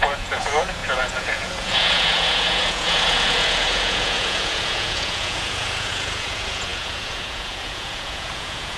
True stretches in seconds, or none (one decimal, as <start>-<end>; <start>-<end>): none